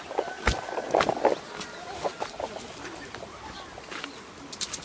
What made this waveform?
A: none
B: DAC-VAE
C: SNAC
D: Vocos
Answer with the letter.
A